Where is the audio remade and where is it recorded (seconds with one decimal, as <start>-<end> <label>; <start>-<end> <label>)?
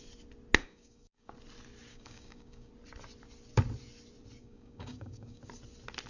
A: 0.0-0.6 recorded; 0.6-1.3 remade; 1.3-1.9 recorded; 1.9-2.7 remade; 2.7-4.4 recorded; 4.4-5.4 remade; 5.4-6.1 recorded